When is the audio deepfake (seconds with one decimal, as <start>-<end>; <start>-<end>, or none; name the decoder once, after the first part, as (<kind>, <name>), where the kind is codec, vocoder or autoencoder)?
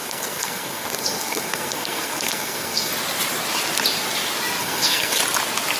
0.0-2.9 (codec, SNAC); 4.6-5.2